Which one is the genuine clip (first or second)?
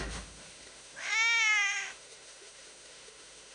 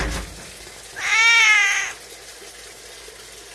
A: second